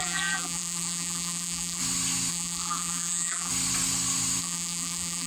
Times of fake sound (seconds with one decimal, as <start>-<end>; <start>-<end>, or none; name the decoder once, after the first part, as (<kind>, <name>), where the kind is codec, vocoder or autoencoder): 0.0-1.8 (vocoder, BigVGAN v2); 2.3-3.5; 4.4-5.3